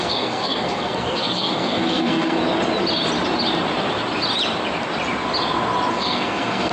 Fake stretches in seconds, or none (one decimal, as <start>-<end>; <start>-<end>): 0.0-2.4; 5.9-6.7